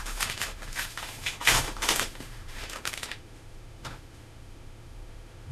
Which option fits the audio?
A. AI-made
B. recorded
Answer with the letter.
A